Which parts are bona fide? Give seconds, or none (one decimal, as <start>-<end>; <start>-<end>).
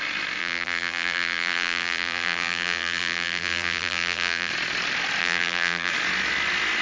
0.0-0.4; 4.5-5.2; 5.9-6.8